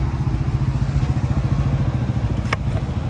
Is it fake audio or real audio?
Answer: real